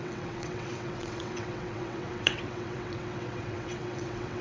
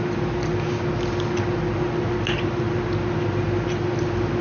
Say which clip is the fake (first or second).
first